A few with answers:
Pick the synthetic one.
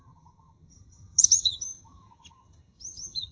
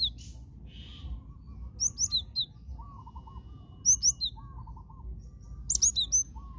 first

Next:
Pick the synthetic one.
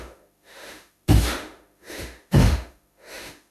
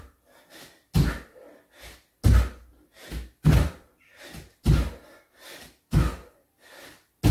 first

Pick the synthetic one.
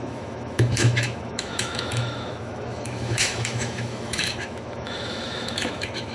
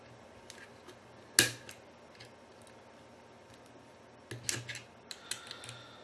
first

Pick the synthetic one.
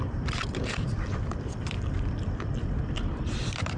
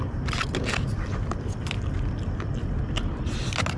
first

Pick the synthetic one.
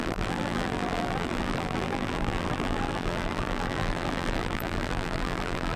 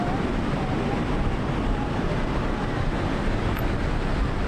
first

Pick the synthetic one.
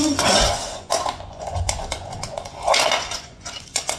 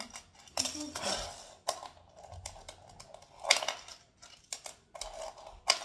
first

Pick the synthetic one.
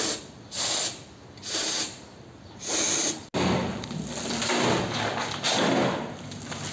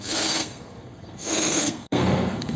second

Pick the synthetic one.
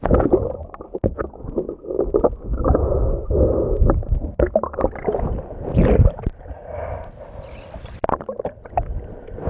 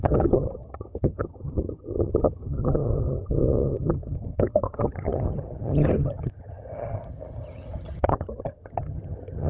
second